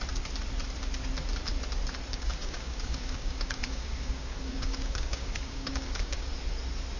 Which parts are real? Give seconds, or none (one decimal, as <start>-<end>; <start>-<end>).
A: 0.0-2.1; 6.3-7.0